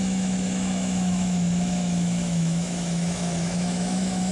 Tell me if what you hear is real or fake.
fake